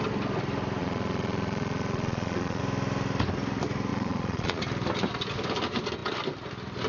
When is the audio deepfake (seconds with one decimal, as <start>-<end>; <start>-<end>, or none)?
0.8-2.6; 3.9-4.6